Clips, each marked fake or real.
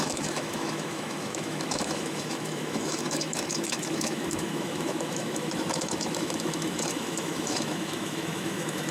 fake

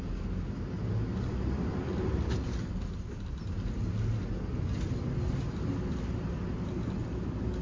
real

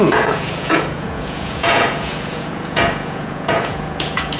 fake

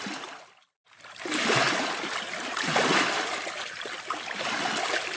real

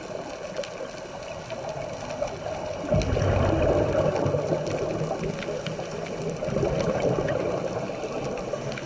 real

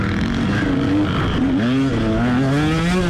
real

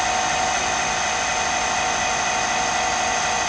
real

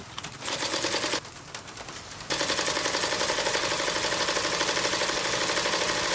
real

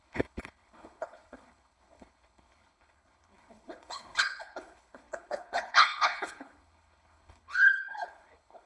fake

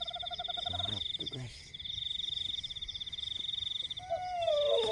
real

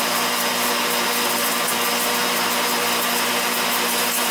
real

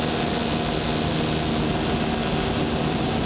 real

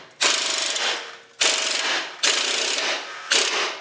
real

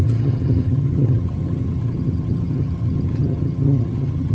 fake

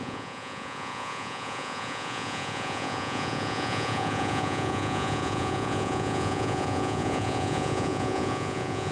fake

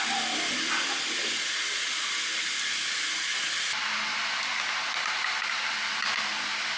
real